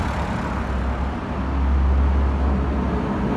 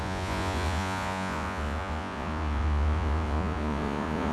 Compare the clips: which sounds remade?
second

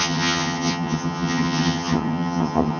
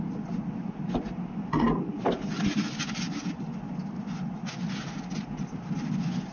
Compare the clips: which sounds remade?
first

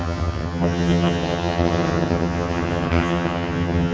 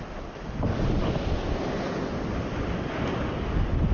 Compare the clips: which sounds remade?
first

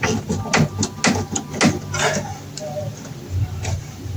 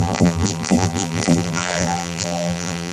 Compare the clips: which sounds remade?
second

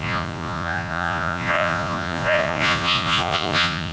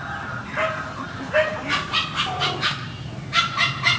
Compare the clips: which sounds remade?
first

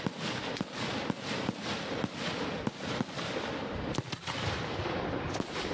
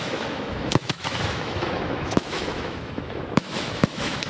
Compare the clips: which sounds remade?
second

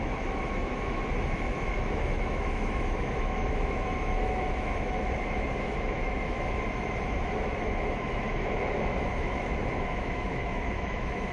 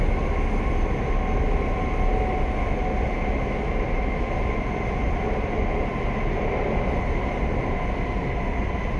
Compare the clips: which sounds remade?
first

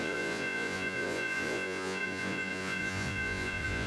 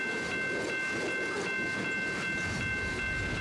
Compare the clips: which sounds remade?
first